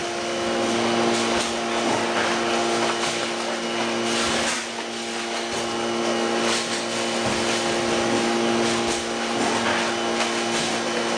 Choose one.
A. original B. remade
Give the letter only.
A